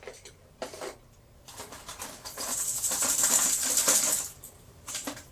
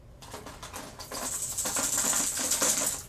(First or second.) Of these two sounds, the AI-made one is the first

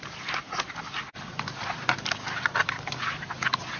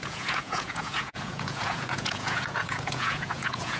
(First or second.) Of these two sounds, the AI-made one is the second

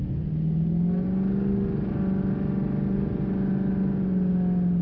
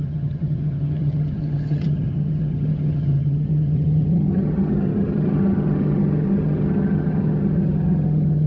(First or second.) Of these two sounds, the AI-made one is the second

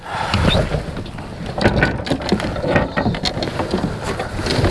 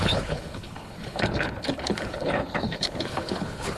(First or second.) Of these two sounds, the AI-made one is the second